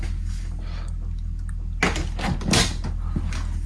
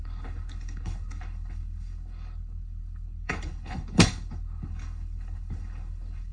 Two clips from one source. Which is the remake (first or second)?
second